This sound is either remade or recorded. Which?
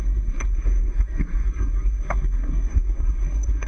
remade